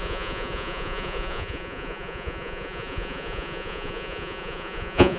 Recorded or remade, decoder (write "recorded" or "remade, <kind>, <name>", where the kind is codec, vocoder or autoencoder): remade, vocoder, Vocos